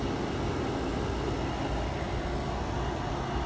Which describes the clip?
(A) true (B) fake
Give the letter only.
A